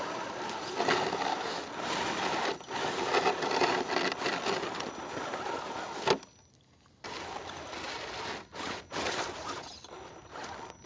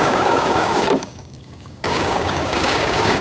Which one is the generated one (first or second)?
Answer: second